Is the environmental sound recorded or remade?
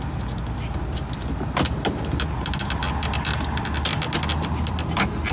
recorded